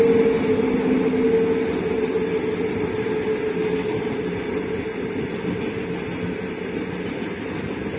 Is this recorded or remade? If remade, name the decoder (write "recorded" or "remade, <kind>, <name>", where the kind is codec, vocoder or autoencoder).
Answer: recorded